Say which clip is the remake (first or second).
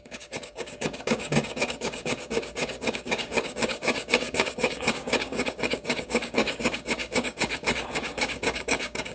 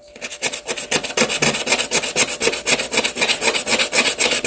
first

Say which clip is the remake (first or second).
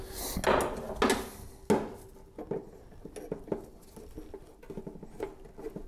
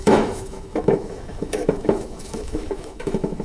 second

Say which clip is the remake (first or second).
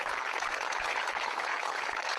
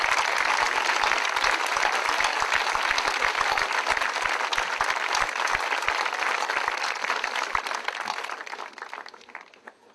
first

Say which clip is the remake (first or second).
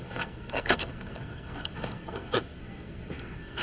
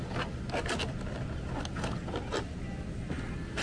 first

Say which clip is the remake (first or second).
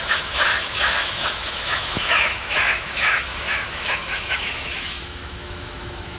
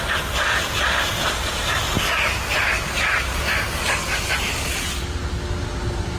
first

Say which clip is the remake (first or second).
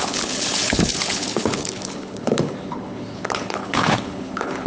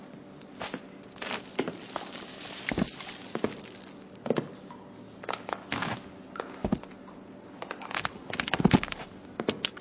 first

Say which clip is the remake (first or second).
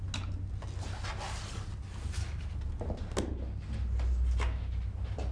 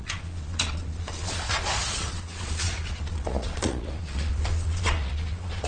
second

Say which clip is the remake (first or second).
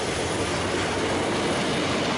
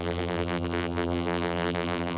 second